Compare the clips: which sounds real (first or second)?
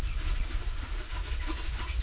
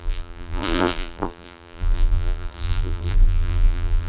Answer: first